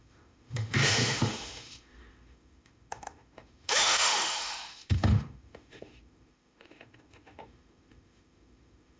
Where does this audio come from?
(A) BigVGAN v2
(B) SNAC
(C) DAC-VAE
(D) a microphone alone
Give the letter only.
C